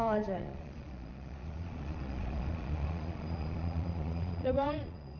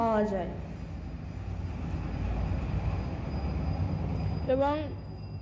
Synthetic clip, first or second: first